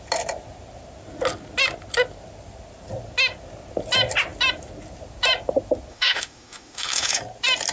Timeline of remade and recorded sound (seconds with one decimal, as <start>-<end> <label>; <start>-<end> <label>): 0.0-5.9 recorded; 5.9-7.2 remade; 7.2-7.7 recorded